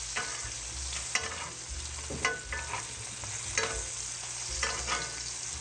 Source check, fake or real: real